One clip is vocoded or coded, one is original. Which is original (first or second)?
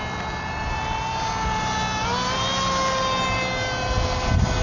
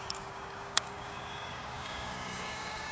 first